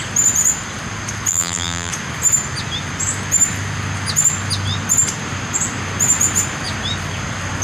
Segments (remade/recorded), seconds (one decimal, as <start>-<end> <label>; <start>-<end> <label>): 0.0-1.3 recorded; 1.3-1.9 remade; 1.9-7.6 recorded